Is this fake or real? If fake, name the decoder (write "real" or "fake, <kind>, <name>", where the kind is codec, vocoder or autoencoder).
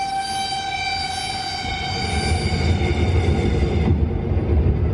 real